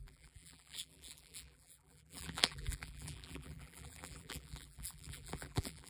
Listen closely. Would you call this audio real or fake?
fake